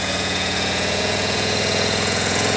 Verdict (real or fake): fake